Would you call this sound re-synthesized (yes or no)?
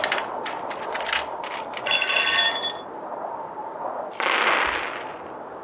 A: no